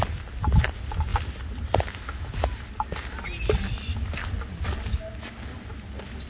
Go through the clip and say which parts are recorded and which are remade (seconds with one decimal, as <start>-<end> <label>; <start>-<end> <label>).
0.0-6.3 recorded